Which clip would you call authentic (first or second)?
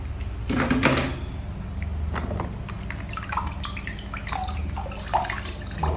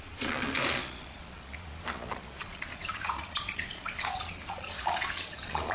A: first